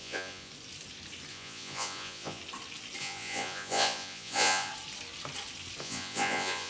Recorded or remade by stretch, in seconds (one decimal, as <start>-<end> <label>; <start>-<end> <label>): 0.0-0.5 remade; 0.5-1.3 recorded; 1.3-2.4 remade; 2.4-3.0 recorded; 3.0-4.7 remade; 4.7-5.8 recorded; 5.8-6.7 remade